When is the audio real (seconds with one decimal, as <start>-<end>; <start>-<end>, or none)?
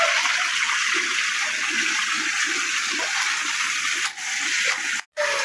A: 0.0-5.4